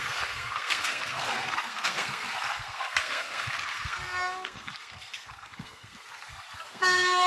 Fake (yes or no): yes